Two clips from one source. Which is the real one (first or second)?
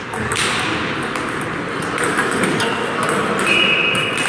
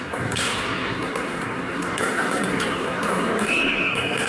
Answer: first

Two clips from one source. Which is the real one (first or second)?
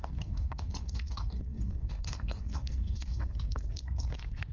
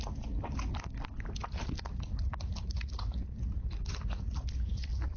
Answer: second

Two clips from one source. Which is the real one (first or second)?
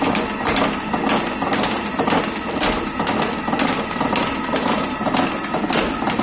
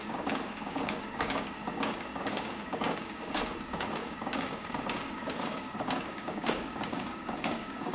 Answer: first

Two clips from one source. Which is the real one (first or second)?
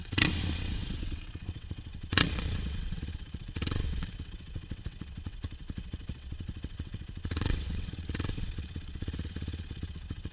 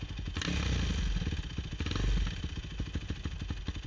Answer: second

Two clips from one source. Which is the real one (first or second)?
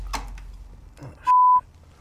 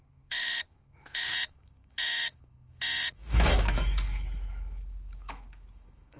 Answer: first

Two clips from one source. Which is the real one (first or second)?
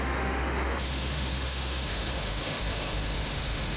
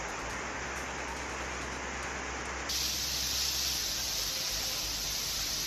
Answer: second